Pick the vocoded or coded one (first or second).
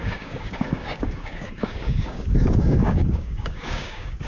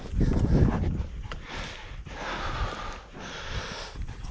first